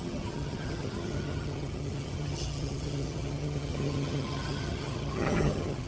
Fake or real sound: fake